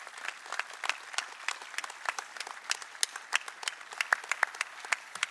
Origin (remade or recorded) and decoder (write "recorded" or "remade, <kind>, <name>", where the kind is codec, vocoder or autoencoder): recorded